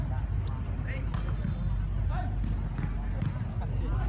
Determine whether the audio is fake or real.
real